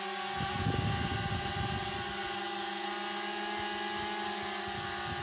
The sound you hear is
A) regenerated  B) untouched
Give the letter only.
B